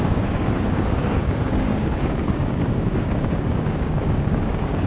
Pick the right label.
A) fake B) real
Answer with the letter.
A